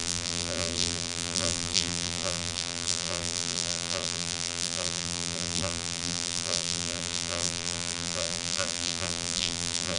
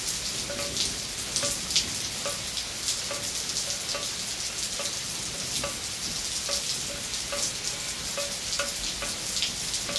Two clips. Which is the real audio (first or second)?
second